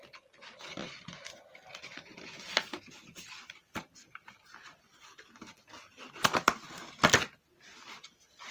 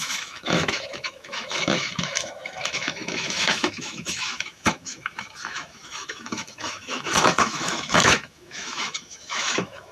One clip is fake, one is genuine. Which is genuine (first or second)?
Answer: first